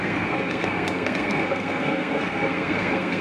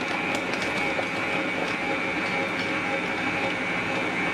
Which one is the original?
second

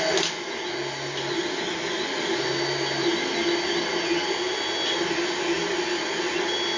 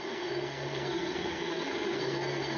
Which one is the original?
first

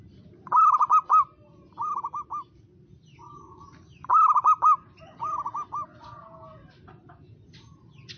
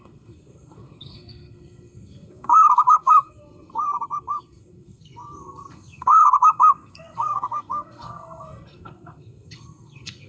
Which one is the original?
first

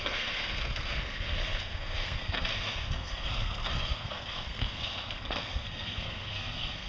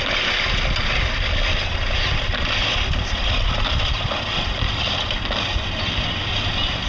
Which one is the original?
second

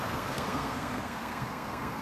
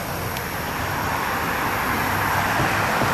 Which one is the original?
second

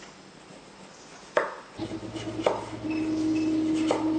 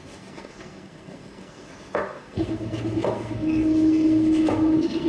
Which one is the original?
first